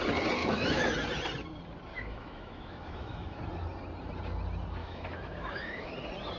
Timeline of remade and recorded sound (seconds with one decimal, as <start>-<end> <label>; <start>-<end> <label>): 0.0-0.4 recorded; 0.4-0.9 remade; 0.9-1.9 recorded; 1.9-3.4 remade; 3.4-4.8 recorded; 4.8-5.9 remade; 5.9-6.4 recorded